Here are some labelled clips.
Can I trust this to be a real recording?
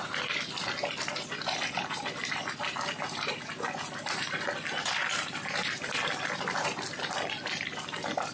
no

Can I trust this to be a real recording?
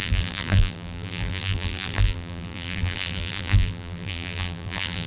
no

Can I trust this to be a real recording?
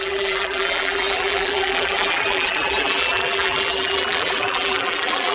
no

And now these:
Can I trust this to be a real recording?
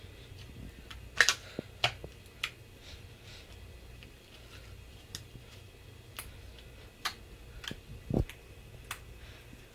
yes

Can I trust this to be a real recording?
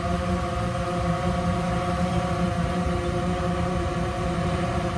no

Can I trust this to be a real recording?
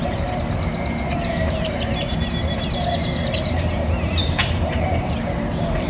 no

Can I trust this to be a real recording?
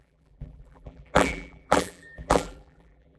no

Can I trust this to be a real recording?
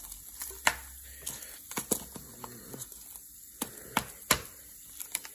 yes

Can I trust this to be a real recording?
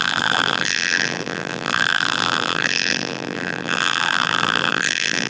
no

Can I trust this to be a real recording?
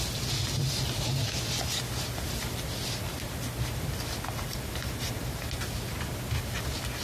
yes